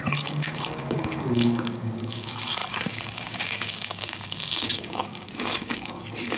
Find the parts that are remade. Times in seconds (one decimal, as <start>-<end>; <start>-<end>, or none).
0.0-6.4